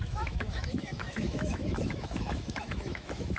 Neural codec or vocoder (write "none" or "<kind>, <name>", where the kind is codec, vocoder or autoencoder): autoencoder, DAC-VAE